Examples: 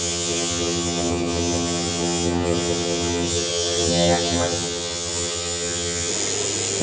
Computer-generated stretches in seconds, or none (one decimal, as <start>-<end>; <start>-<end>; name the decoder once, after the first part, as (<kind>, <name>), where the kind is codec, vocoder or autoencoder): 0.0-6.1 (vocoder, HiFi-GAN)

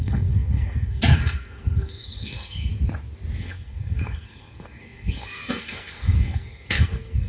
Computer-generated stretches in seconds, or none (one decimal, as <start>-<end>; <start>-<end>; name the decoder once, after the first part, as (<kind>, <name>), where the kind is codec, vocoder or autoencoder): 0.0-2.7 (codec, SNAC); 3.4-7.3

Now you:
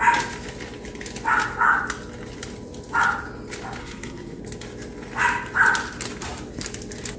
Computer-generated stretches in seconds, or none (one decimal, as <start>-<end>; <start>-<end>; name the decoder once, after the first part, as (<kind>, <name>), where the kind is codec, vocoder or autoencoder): 3.8-4.4 (codec, SNAC)

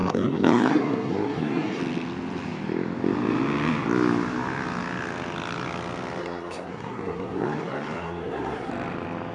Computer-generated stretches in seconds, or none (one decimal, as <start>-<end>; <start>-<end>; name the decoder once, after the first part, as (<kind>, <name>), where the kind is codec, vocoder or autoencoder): 0.0-1.8 (codec, SNAC); 6.2-8.7

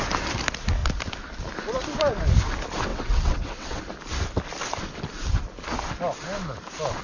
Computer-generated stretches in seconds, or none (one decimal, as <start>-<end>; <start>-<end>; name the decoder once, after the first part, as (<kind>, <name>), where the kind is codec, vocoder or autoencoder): 2.9-3.8 (vocoder, WaveNeXt)

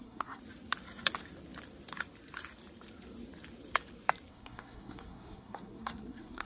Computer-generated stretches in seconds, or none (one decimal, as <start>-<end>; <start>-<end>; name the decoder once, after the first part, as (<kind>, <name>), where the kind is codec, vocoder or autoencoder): 0.0-0.4 (codec, SNAC); 4.3-6.5

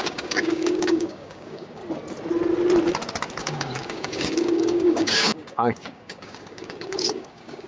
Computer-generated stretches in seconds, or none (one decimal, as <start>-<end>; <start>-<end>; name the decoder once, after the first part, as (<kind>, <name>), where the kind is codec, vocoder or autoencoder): 0.0-1.8 (codec, DAC); 3.4-7.7